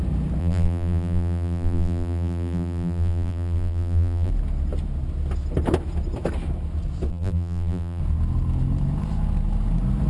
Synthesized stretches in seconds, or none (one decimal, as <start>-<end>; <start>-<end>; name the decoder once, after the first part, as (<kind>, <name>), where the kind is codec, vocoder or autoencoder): 0.4-4.3 (vocoder, BigVGAN v2); 7.1-8.0